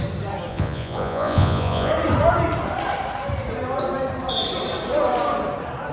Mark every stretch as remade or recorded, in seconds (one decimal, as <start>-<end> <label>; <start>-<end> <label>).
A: 0.0-0.5 recorded; 0.5-1.9 remade; 1.9-5.9 recorded